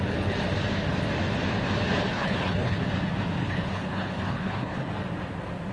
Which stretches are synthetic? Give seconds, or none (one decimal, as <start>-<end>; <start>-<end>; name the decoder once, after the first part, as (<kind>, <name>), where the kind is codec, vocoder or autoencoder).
2.1-2.8 (codec, HILCodec); 3.4-4.9